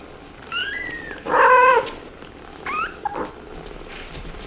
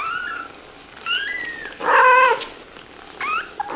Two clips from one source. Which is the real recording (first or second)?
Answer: second